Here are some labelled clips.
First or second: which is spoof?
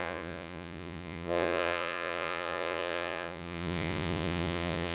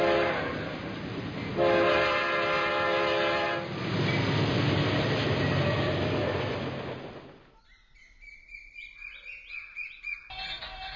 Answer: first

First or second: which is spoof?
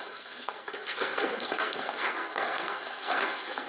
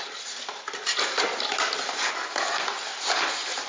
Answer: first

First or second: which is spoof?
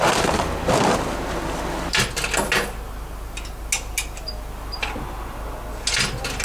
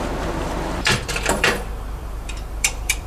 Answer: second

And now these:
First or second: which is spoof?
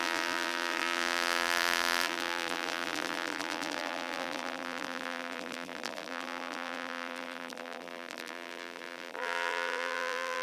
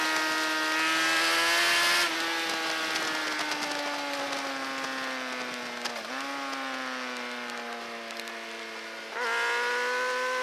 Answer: first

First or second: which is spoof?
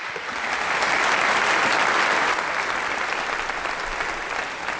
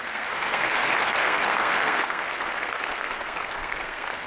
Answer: second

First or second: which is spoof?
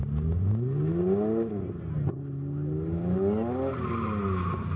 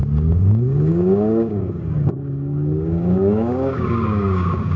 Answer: second